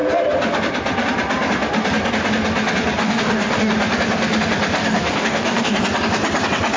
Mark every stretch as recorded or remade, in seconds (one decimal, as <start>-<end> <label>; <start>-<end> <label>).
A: 0.0-3.0 recorded; 3.0-3.7 remade; 3.7-4.8 recorded; 4.8-5.8 remade; 5.8-6.8 recorded